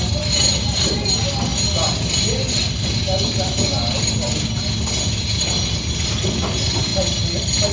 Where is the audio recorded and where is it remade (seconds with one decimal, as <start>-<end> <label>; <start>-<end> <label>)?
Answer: 0.0-7.7 recorded

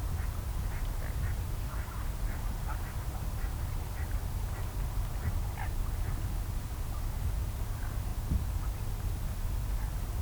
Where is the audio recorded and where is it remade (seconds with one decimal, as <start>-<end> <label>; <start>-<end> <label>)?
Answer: 0.0-10.2 recorded

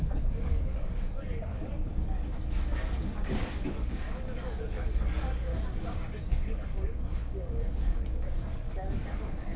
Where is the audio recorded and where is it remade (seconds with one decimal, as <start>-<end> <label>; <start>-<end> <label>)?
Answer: 0.0-1.7 remade; 1.7-3.0 recorded; 3.0-5.5 remade; 5.5-6.2 recorded; 6.2-9.6 remade

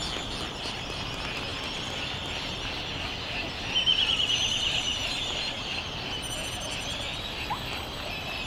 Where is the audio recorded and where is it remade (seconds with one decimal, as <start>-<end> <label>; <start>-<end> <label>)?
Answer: 0.0-3.9 recorded; 3.9-5.1 remade; 5.1-8.5 recorded

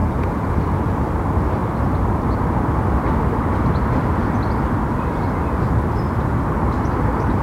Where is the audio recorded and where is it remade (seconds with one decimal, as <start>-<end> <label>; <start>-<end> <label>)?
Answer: 0.0-0.6 remade; 0.6-7.4 recorded

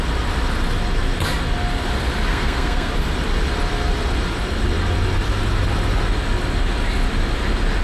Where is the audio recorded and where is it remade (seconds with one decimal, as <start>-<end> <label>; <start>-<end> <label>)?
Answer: 0.0-2.3 recorded; 2.3-2.9 remade; 2.9-7.8 recorded

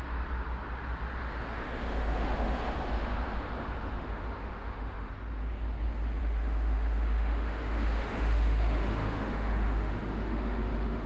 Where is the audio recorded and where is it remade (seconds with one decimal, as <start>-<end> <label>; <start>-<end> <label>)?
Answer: 0.0-1.5 recorded; 1.5-5.1 remade; 5.1-6.2 recorded; 6.2-11.1 remade

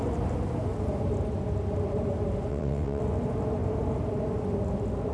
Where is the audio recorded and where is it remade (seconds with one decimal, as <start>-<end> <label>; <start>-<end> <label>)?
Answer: 0.0-2.5 recorded; 2.5-3.0 remade; 3.0-5.1 recorded